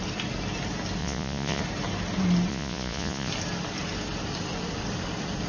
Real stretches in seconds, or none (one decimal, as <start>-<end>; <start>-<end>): 0.0-1.0; 1.6-2.5; 3.3-5.5